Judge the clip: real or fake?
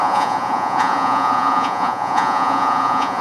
fake